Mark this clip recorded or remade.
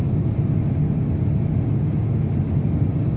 recorded